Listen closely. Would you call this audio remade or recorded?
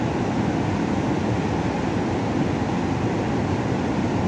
recorded